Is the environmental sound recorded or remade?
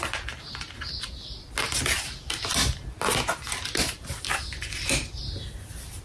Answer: recorded